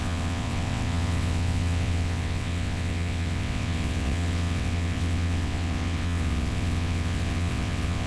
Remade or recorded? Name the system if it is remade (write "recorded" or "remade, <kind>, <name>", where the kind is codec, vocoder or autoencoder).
remade, vocoder, WaveNeXt